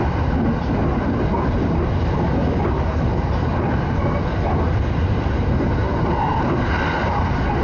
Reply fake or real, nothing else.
real